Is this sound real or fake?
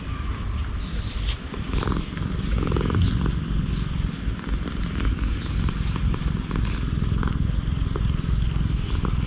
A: real